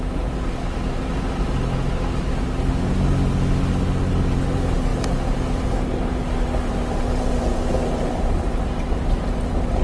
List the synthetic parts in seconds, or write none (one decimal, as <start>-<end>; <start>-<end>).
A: none